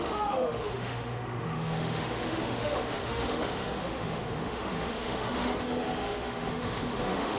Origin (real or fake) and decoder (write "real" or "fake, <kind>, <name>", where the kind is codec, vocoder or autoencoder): fake, autoencoder, DAC-VAE